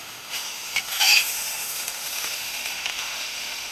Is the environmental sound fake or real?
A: fake